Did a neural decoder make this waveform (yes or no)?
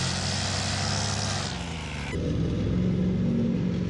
no